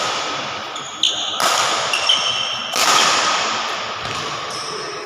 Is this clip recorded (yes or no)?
yes